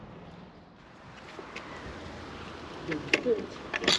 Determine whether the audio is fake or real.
real